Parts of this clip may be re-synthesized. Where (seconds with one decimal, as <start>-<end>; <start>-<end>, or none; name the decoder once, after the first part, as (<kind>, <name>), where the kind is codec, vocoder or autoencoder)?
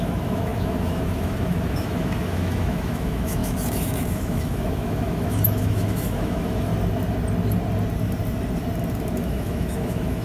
0.0-6.7 (autoencoder, DAC-VAE); 9.2-10.2